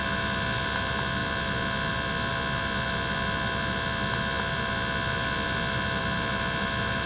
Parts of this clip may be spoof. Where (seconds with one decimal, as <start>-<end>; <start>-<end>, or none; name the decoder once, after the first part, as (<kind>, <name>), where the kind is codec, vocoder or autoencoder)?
none